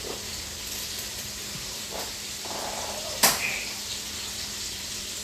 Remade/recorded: remade